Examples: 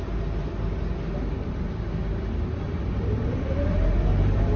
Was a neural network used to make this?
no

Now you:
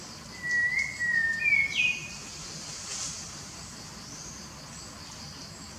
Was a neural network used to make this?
no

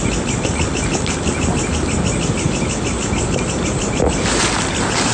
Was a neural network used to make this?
no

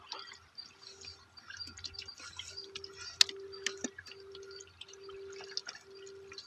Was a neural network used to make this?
no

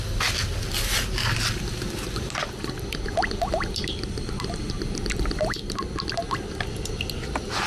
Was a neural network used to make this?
no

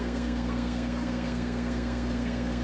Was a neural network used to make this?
yes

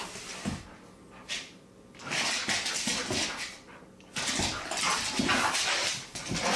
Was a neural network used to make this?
no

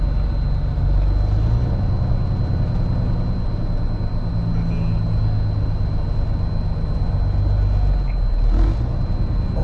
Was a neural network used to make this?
no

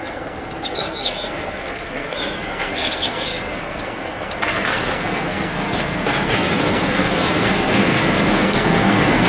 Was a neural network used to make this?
yes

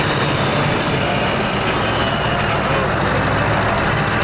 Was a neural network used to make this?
no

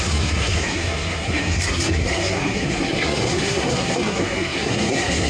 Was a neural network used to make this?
yes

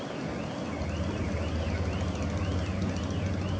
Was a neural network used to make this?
no